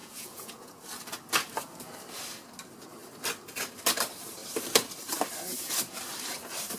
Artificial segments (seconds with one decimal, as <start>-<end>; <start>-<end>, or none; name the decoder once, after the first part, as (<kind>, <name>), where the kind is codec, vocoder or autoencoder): 0.0-0.8 (vocoder, Vocos)